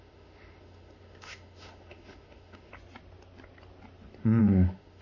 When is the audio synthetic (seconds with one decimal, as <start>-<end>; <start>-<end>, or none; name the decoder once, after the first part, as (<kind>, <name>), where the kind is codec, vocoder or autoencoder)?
0.0-2.7 (autoencoder, DAC-VAE); 4.4-5.0